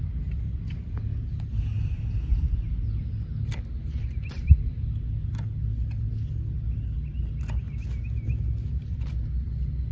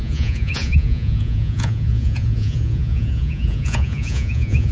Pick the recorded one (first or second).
first